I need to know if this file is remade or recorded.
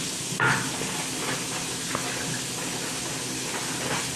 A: recorded